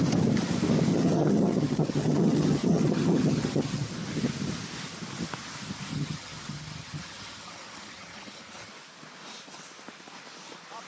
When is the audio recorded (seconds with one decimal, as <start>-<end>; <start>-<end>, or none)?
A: 0.0-0.9; 3.9-5.9; 8.7-10.9